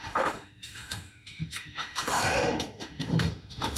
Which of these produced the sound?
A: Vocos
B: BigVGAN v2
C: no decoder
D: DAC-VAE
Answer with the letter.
D